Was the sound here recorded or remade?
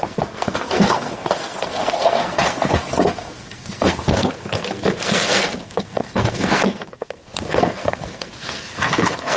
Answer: remade